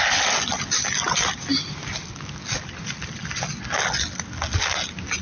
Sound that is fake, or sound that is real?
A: real